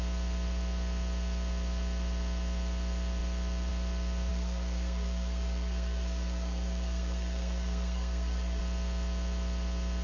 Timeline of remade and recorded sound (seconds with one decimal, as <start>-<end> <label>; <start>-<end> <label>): 0.0-4.3 recorded; 4.3-8.6 remade; 8.6-10.0 recorded

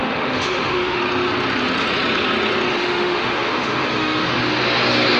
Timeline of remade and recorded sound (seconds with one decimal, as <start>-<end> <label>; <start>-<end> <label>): 0.0-1.0 remade; 1.0-2.7 recorded; 2.7-4.4 remade; 4.4-5.2 recorded

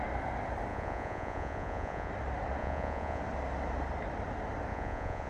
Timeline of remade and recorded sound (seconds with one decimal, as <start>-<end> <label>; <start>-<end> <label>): 0.0-0.7 recorded; 0.7-2.1 remade; 2.1-2.6 recorded; 2.6-3.2 remade; 3.2-4.7 recorded; 4.7-5.3 remade

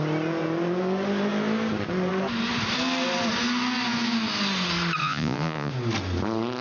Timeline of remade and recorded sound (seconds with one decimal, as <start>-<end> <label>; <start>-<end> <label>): 0.0-5.0 recorded; 5.0-5.7 remade; 5.7-6.6 recorded

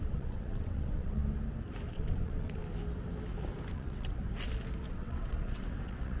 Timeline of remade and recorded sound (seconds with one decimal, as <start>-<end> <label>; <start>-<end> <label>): 0.0-1.2 remade; 1.2-1.9 recorded; 1.9-2.6 remade; 2.6-3.7 recorded; 3.7-4.2 remade; 4.2-4.9 recorded; 4.9-6.2 remade

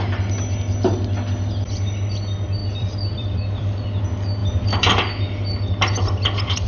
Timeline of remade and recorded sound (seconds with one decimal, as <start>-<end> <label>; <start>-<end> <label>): 0.0-2.6 recorded; 2.6-4.0 remade; 4.0-6.7 recorded

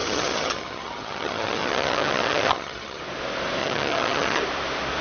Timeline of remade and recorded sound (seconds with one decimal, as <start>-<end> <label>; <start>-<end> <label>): 0.0-3.0 remade; 3.0-3.6 recorded; 3.6-4.4 remade; 4.4-5.0 recorded